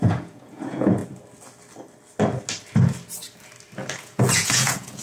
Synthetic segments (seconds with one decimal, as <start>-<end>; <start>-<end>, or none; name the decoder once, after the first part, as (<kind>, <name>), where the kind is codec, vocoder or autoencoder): 0.0-1.0 (vocoder, Vocos); 4.0-5.0